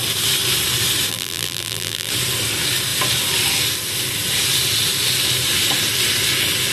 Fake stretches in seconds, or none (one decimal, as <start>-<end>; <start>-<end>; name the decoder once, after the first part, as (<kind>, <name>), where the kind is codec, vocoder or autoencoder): 1.1-2.1 (vocoder, BigVGAN v2)